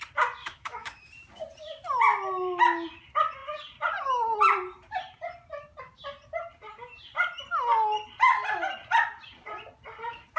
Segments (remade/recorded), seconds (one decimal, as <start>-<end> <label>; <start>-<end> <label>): 0.0-0.4 recorded; 0.4-1.1 remade; 1.1-10.4 recorded